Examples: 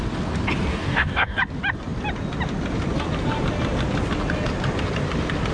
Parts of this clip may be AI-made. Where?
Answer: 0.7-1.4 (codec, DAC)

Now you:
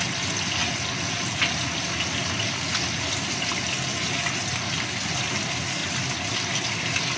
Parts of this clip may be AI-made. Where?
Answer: none

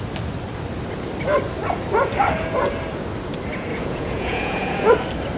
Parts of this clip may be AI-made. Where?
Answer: 3.7-4.9 (vocoder, Vocos)

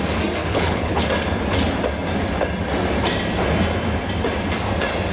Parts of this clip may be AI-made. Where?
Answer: 0.4-1.0 (codec, HILCodec)

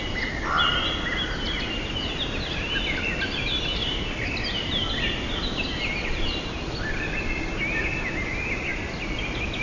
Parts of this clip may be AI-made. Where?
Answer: none

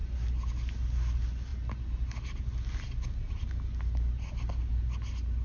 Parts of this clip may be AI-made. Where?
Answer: none

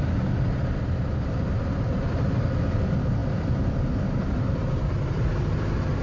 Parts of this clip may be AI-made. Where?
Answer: none

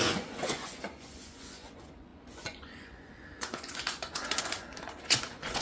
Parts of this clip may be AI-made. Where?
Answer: 0.0-5.6 (vocoder, Vocos)